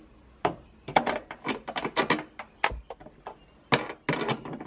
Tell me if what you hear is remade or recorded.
recorded